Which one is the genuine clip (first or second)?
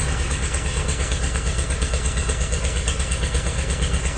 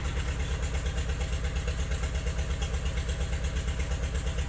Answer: second